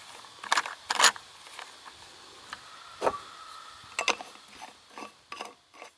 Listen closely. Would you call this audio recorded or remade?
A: recorded